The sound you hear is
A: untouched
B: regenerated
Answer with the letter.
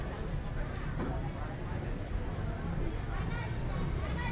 A